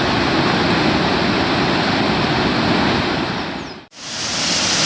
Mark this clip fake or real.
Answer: real